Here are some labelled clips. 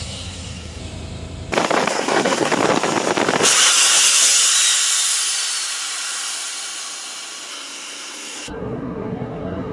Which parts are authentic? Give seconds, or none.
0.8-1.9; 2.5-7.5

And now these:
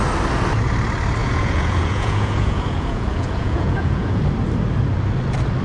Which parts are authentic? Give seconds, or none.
0.0-1.2; 4.2-5.6

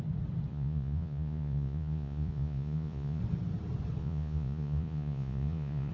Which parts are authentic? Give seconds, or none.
0.0-0.5; 3.2-4.0

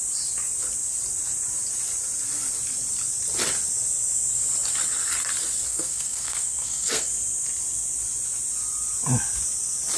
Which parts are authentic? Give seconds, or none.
0.0-5.7; 7.1-10.0

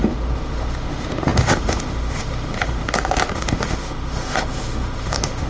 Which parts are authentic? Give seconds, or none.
none

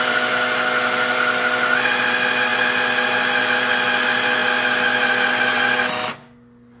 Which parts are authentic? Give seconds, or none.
0.0-6.8